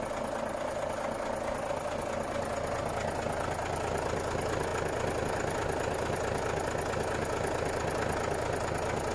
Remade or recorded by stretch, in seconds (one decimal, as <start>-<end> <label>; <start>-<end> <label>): 0.0-9.1 recorded